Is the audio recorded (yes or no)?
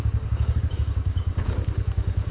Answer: no